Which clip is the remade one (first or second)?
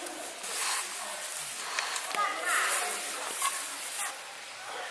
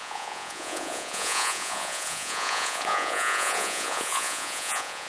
second